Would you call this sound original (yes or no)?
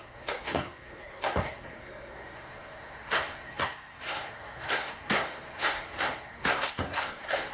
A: no